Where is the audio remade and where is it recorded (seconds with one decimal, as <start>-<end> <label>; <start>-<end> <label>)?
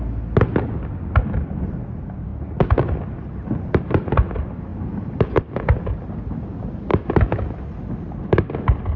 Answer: 0.0-9.0 recorded